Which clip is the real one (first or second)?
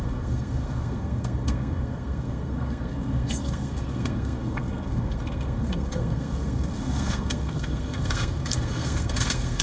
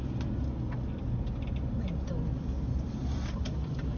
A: second